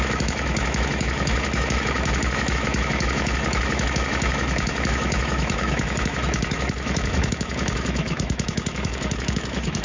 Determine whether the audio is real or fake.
fake